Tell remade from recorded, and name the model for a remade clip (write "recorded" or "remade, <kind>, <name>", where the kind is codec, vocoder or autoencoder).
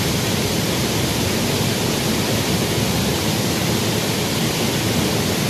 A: recorded